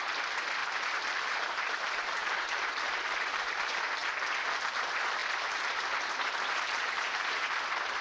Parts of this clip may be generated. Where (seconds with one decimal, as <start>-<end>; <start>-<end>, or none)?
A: 0.0-0.6; 1.3-4.0; 4.8-8.0